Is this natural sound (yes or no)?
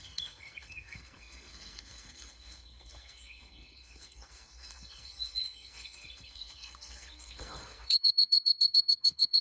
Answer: no